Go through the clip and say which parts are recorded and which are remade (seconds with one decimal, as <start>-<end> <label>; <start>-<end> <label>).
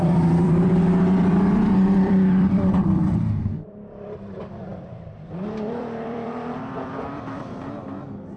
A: 0.0-8.4 remade